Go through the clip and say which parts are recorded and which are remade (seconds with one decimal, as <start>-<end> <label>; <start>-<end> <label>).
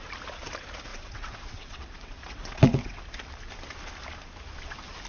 0.0-0.9 recorded; 0.9-3.0 remade; 3.0-5.1 recorded